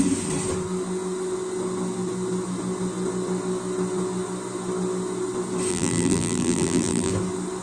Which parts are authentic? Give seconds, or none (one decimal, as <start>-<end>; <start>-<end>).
0.0-5.7; 7.1-7.6